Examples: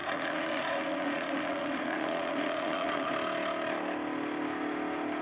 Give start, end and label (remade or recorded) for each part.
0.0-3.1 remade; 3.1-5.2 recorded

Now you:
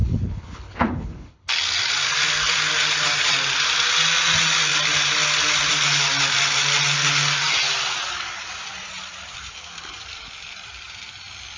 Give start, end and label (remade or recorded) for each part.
0.0-1.5 remade; 1.5-11.6 recorded

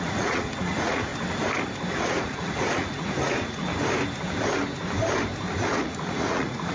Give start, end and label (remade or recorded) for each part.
0.0-1.1 remade; 1.1-1.9 recorded; 1.9-3.7 remade; 3.7-5.7 recorded; 5.7-6.7 remade

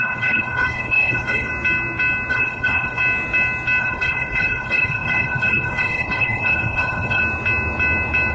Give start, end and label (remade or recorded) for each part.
0.0-1.5 remade; 1.5-2.3 recorded; 2.3-3.0 remade; 3.0-3.8 recorded; 3.8-7.2 remade; 7.2-8.3 recorded

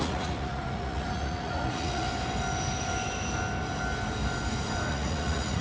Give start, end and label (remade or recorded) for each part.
0.0-2.1 remade; 2.1-4.9 recorded; 4.9-5.6 remade

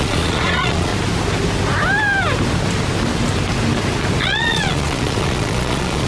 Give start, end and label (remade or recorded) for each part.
0.0-0.9 remade; 0.9-4.2 recorded; 4.2-6.1 remade

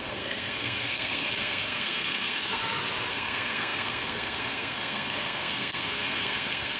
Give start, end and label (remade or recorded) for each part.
0.0-2.6 remade; 2.6-3.1 recorded; 3.1-6.8 remade